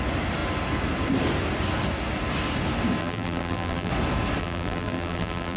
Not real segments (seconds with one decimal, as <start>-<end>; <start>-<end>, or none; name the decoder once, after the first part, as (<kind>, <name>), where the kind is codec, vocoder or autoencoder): 3.0-3.9 (vocoder, BigVGAN v2); 4.4-5.6